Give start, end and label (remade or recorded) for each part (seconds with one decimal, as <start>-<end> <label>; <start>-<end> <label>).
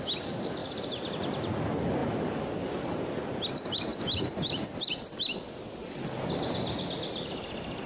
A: 0.0-0.6 recorded; 0.6-1.1 remade; 1.1-3.9 recorded; 3.9-5.1 remade; 5.1-7.9 recorded